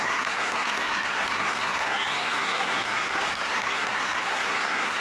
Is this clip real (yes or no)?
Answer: no